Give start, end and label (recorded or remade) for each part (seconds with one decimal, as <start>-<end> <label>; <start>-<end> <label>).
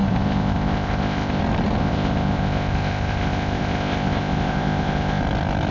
0.0-1.4 remade; 1.4-1.8 recorded; 1.8-5.2 remade; 5.2-5.7 recorded